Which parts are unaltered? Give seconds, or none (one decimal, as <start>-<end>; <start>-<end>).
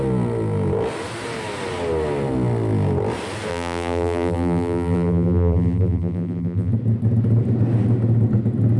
0.0-3.5; 6.7-8.8